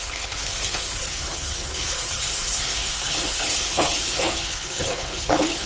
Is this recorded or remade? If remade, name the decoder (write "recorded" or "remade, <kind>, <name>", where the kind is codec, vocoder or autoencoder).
remade, codec, HILCodec